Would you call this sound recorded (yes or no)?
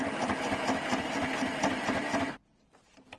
yes